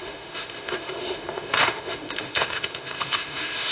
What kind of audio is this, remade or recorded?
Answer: remade